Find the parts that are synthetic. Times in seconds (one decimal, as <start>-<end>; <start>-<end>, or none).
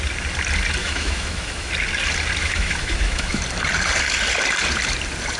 0.8-1.7; 2.4-3.4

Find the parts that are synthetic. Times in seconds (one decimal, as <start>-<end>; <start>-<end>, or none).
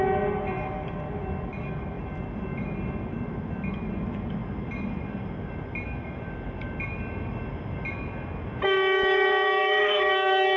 8.9-10.6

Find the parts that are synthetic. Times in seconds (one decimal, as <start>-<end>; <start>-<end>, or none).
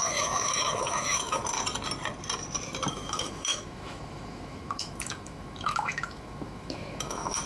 0.0-1.4; 2.9-7.5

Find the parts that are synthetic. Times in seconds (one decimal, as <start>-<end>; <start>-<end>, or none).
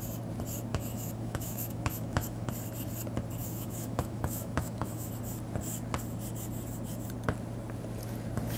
0.7-2.5; 3.4-5.1